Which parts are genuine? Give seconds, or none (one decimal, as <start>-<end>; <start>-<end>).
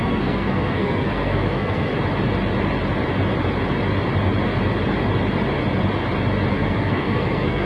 1.9-6.5